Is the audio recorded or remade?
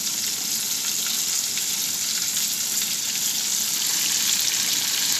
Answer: recorded